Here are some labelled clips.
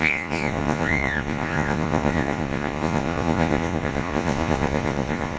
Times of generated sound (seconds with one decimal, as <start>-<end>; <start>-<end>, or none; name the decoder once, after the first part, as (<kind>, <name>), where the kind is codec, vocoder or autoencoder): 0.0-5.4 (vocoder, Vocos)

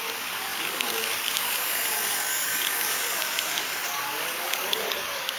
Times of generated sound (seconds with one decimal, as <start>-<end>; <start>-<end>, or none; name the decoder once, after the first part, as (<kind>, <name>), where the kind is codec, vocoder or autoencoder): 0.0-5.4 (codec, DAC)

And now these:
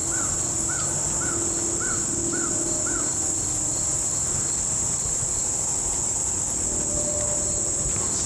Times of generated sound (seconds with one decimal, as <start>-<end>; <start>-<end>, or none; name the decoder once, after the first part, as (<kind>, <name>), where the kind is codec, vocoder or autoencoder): none

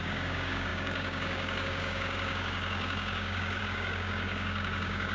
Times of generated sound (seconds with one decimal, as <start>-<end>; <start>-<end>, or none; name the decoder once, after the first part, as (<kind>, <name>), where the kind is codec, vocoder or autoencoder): 0.0-5.1 (codec, DAC)

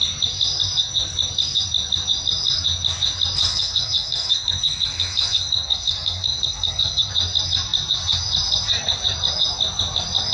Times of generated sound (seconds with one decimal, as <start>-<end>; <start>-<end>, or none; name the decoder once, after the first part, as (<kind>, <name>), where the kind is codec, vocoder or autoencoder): 3.5-7.1 (codec, SNAC)

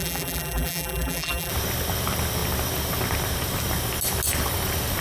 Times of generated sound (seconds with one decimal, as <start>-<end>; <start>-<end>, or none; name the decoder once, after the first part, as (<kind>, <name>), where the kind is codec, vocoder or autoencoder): 0.0-1.5 (vocoder, BigVGAN v2)